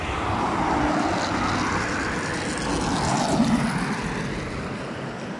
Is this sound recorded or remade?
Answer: recorded